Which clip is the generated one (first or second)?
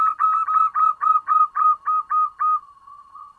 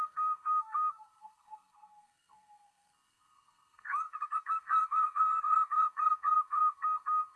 second